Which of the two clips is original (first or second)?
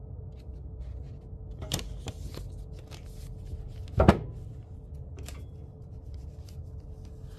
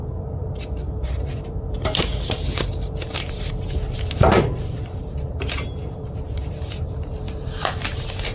first